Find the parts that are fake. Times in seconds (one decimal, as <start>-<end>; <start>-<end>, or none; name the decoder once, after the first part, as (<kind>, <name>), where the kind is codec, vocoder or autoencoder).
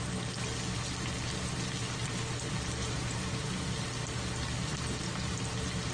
2.8-3.6 (vocoder, Vocos)